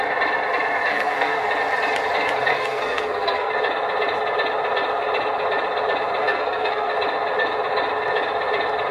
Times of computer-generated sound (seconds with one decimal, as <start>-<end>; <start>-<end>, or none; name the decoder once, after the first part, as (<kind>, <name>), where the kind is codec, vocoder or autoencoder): 0.9-1.5 (codec, SNAC); 2.5-3.5; 6.2-6.9